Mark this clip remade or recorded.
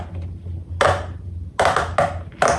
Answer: recorded